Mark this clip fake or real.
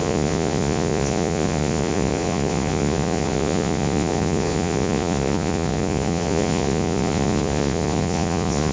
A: fake